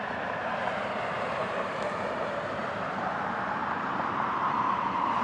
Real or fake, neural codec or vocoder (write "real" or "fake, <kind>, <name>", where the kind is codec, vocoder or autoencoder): fake, vocoder, BigVGAN v2